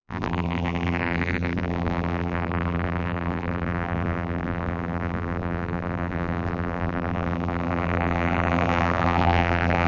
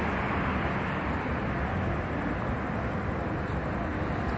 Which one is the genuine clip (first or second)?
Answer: second